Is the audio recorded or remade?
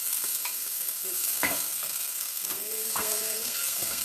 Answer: remade